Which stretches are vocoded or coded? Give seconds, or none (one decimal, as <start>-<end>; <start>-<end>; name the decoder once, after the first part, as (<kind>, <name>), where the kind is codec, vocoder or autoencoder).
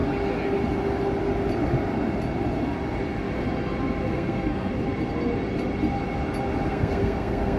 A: 4.1-4.7 (codec, SNAC); 6.7-7.6